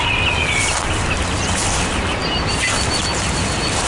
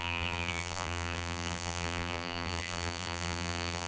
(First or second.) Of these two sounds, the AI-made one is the second